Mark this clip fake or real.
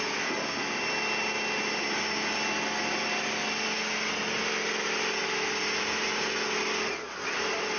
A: real